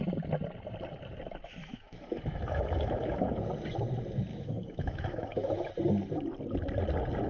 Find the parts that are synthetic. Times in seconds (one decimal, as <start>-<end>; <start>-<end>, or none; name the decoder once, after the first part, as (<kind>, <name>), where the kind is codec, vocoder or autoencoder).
1.6-3.3 (autoencoder, DAC-VAE); 4.3-5.7